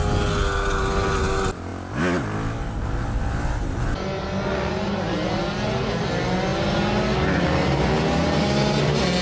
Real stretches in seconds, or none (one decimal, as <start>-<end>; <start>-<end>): 0.0-9.2